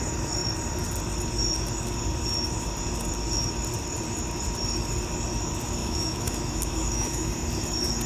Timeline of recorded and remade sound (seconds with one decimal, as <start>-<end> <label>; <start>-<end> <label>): 0.0-5.8 recorded; 5.8-7.3 remade; 7.3-8.1 recorded